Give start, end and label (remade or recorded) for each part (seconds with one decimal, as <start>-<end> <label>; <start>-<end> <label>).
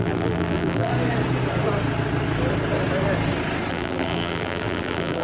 0.0-0.9 remade; 0.9-3.7 recorded; 3.7-5.2 remade